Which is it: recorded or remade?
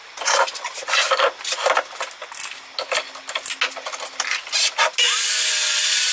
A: recorded